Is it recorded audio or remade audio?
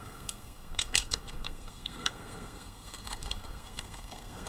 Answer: remade